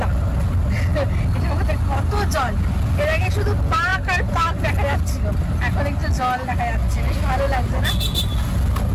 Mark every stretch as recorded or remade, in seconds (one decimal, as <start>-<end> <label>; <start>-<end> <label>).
0.0-8.9 recorded